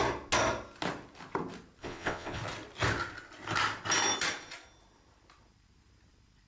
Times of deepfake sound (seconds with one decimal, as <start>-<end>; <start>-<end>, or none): 1.8-2.4